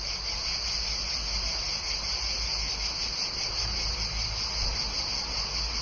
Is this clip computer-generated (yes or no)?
no